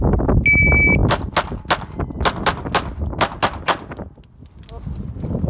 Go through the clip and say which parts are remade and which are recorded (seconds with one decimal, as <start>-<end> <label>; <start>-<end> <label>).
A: 0.0-5.5 recorded